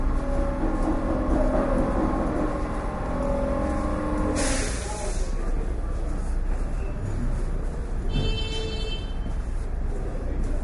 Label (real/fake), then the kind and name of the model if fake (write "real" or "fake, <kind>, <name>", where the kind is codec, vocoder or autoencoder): real